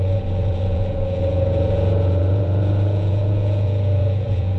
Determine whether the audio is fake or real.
fake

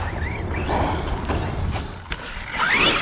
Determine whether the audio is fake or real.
real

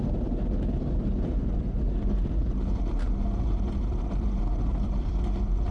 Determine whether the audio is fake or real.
fake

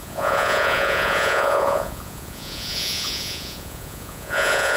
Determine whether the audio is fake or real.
fake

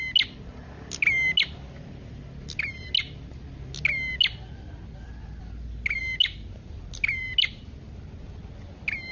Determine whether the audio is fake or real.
real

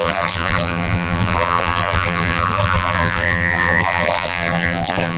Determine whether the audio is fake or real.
fake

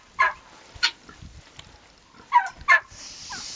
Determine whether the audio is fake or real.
real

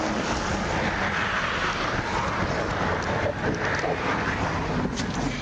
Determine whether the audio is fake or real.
real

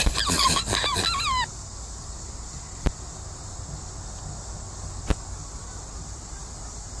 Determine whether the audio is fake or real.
real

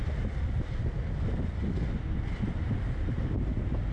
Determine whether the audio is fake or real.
real